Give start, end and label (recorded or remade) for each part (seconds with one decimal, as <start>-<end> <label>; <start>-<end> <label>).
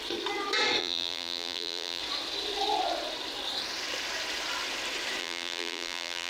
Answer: 0.0-0.8 recorded; 0.8-2.0 remade; 2.0-5.2 recorded; 5.2-6.3 remade